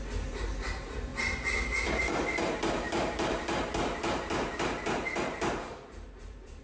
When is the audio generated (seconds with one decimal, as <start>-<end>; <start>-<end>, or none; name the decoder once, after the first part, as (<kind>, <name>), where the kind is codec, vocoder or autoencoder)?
0.0-1.1 (vocoder, BigVGAN v2); 1.9-6.6